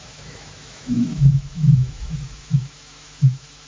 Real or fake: fake